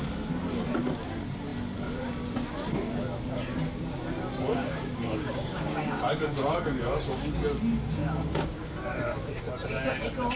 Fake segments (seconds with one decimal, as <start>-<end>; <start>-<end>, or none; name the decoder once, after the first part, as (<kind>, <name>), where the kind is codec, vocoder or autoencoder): 4.5-7.2 (codec, DAC); 8.0-8.7